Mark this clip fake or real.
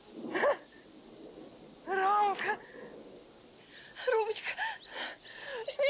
real